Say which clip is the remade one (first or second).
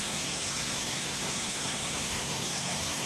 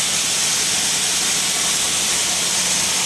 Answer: first